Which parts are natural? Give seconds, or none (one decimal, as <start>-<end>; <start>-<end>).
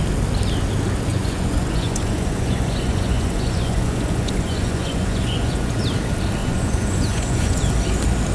0.0-1.1; 5.8-6.4; 7.6-8.3